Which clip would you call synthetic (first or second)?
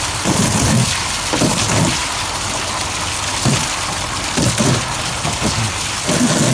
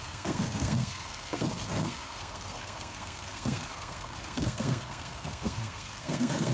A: second